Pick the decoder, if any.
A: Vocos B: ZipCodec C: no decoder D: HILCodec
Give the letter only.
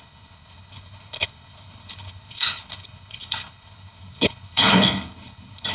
D